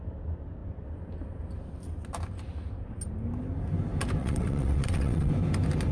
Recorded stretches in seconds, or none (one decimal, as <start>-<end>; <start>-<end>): 0.0-4.2; 5.3-5.9